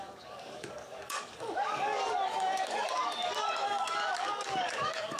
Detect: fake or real fake